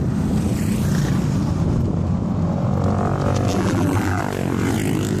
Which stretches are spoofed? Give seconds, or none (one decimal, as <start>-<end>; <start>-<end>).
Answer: 3.5-4.2